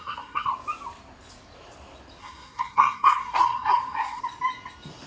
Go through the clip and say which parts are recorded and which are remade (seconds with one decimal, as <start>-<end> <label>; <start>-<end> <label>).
0.0-0.5 remade; 0.5-2.2 recorded; 2.2-4.2 remade; 4.2-5.1 recorded